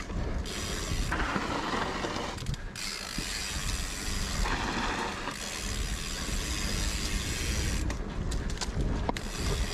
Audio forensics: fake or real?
real